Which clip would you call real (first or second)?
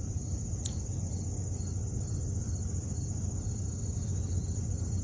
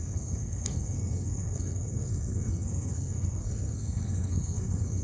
first